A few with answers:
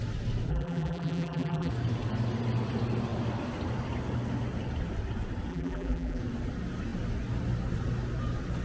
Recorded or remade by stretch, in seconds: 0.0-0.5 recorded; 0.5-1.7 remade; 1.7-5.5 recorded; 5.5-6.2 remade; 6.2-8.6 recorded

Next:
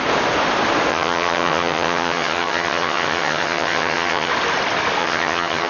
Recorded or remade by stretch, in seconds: 0.0-0.9 recorded; 0.9-4.3 remade; 4.3-5.0 recorded; 5.0-5.7 remade

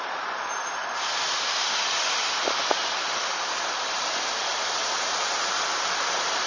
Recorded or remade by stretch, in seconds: 0.0-0.8 remade; 0.8-3.1 recorded; 3.1-6.5 remade